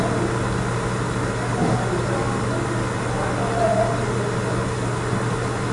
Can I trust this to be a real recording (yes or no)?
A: yes